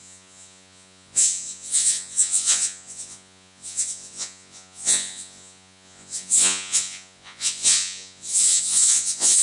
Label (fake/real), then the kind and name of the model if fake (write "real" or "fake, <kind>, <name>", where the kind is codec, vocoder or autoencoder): fake, vocoder, Vocos